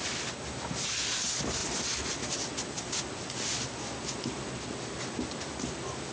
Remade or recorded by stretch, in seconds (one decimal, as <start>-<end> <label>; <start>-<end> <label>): 0.0-6.1 recorded